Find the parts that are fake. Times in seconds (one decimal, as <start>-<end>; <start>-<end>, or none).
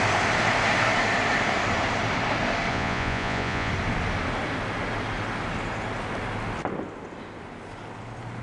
2.7-3.7